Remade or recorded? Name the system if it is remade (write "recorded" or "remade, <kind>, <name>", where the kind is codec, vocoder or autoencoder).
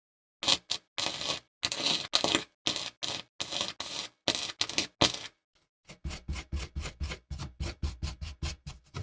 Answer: recorded